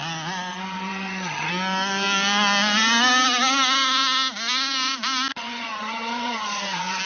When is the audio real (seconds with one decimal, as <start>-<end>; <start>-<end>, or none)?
0.0-0.5; 1.5-5.3